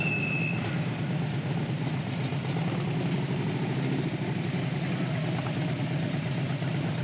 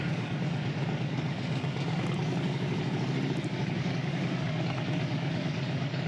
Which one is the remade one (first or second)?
second